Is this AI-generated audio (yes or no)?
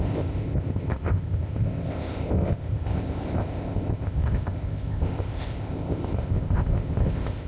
yes